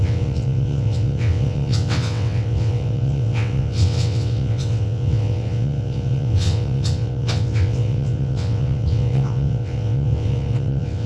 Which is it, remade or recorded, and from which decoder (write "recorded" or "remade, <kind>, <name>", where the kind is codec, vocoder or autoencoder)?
remade, vocoder, WaveNeXt